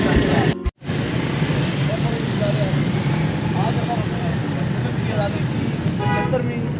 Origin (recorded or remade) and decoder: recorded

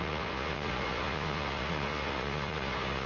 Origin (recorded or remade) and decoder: remade, vocoder, Vocos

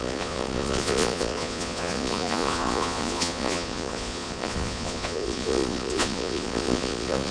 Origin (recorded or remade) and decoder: remade, vocoder, Vocos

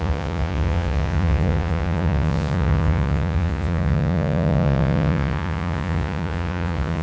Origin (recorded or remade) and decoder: remade, vocoder, Vocos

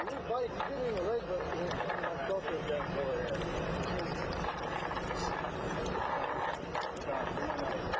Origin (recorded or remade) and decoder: recorded